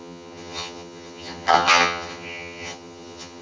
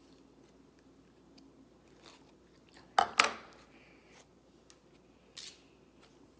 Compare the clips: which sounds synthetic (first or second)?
first